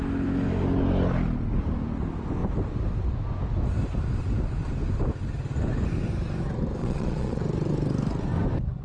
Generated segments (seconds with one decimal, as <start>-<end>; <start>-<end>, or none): 6.8-7.4